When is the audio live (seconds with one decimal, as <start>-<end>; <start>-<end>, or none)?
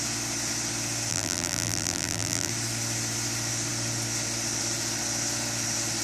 0.0-1.1; 2.5-6.0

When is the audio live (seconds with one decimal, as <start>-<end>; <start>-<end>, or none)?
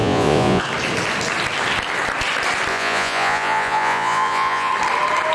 0.6-2.7; 4.7-5.3